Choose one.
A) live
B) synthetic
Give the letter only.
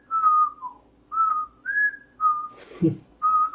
A